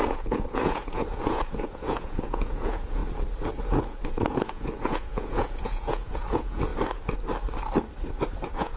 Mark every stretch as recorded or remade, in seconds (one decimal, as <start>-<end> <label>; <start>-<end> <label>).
0.0-3.0 remade; 3.0-3.6 recorded; 3.6-6.7 remade; 6.7-8.4 recorded; 8.4-8.8 remade